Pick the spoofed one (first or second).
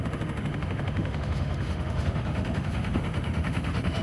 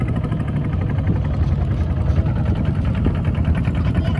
first